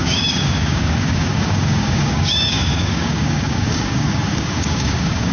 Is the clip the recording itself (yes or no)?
no